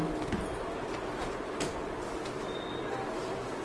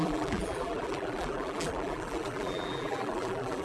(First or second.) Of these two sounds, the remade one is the second